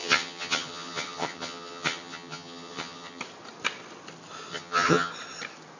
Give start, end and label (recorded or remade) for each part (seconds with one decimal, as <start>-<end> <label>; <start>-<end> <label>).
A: 0.0-3.2 remade; 3.2-4.5 recorded; 4.5-5.1 remade; 5.1-5.8 recorded